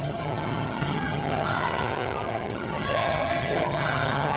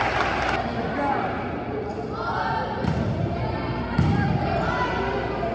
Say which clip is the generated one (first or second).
first